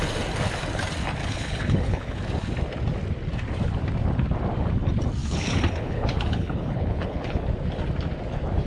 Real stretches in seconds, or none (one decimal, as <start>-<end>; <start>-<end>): 0.0-1.2; 2.2-5.2; 7.5-8.7